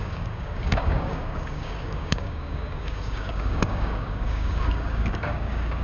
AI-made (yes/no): yes